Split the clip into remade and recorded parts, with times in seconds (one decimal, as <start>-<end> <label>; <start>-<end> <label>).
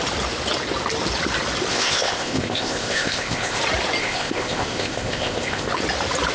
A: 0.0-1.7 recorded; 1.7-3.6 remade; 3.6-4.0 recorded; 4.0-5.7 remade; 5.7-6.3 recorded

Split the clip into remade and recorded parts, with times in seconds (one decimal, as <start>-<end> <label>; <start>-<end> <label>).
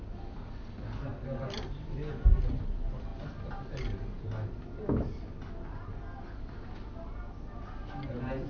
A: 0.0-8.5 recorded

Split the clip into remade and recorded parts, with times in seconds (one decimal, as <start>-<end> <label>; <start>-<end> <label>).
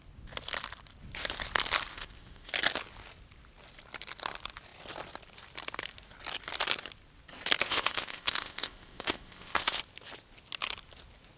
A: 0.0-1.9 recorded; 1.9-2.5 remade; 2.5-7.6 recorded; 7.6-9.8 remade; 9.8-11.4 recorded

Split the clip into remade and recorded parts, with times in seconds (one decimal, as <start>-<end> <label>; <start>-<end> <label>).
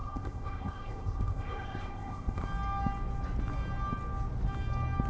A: 0.0-2.4 remade; 2.4-5.1 recorded